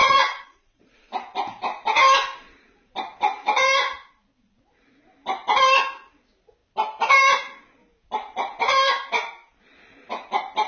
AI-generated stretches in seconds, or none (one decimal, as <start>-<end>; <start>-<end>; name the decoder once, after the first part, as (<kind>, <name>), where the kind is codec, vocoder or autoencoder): 0.0-0.8 (vocoder, Vocos)